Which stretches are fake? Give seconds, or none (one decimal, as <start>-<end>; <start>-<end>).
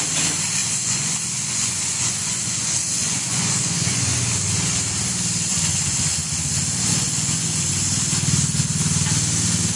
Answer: 0.6-4.2; 5.5-6.1; 6.9-7.7